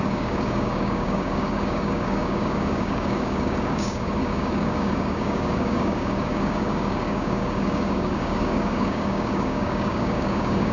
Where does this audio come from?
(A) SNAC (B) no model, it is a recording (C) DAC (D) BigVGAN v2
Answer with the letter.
C